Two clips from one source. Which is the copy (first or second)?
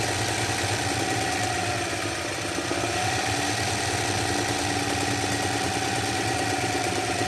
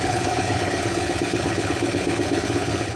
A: second